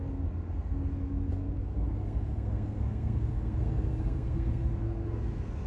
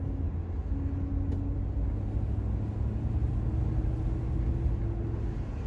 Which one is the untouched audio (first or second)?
second